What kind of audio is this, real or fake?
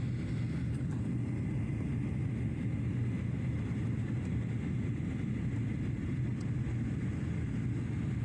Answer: real